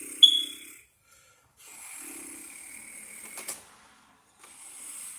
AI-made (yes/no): no